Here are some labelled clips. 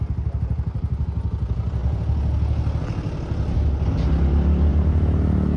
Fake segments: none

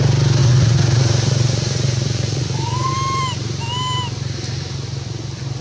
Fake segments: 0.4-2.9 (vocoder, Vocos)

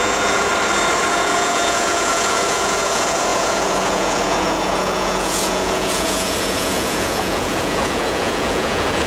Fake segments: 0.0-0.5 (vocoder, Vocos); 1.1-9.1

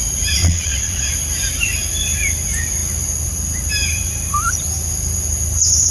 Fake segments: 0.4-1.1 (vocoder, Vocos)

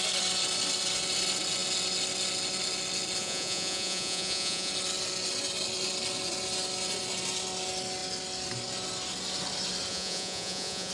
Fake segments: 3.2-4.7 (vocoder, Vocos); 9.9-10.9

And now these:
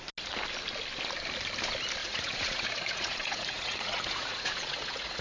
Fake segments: 2.0-5.2 (vocoder, Vocos)

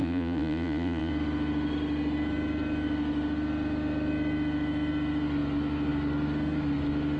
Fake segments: 0.0-1.1 (vocoder, Vocos)

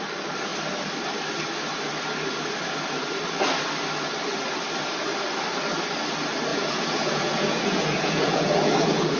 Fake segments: 6.5-9.2 (vocoder, Vocos)